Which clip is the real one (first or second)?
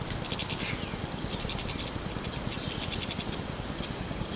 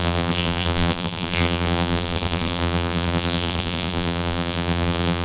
first